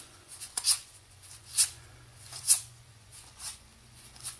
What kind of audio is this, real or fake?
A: fake